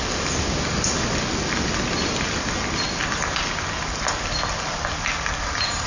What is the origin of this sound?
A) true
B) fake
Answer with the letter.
A